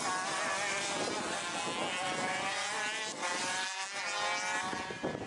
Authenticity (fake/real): real